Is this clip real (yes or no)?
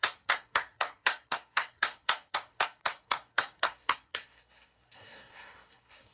no